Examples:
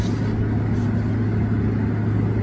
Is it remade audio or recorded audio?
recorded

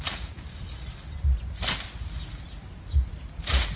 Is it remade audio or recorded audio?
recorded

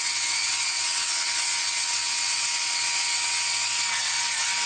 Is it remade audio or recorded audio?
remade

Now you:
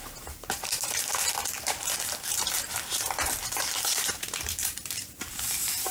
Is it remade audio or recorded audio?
remade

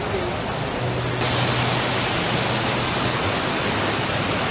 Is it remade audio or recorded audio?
recorded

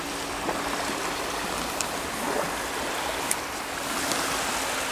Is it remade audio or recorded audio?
recorded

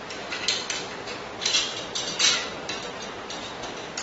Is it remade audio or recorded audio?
recorded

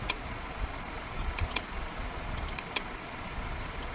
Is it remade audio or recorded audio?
remade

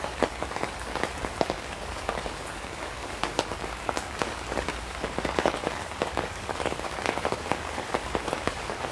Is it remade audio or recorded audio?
remade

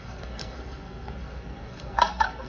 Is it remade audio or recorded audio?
remade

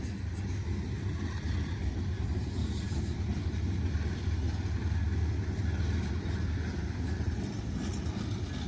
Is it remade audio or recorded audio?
recorded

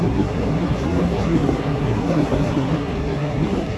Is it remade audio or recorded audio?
remade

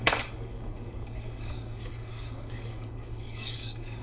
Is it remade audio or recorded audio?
remade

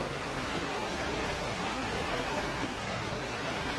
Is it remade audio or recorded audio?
remade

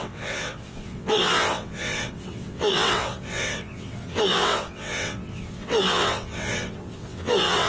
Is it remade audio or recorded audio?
remade